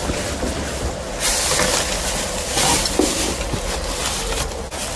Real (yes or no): yes